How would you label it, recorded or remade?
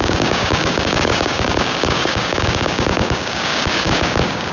remade